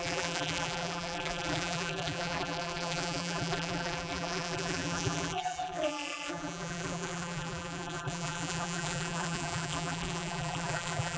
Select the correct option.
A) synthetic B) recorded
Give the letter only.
A